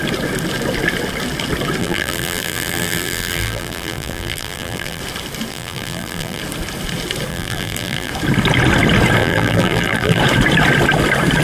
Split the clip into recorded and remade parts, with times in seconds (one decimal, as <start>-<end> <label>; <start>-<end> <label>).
0.0-1.8 recorded; 1.8-5.0 remade; 5.0-5.5 recorded; 5.5-6.4 remade; 6.4-7.3 recorded; 7.3-8.1 remade; 8.1-9.2 recorded; 9.2-10.2 remade; 10.2-11.4 recorded